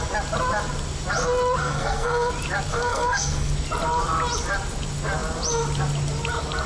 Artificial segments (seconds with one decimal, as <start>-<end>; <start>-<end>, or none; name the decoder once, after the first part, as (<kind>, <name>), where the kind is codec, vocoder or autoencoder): 1.6-2.3 (codec, SNAC); 2.7-3.5